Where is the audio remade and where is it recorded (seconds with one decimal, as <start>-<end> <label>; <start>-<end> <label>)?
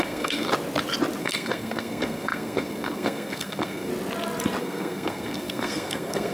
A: 0.0-0.5 remade; 0.5-1.2 recorded; 1.2-3.9 remade; 3.9-4.6 recorded; 4.6-6.3 remade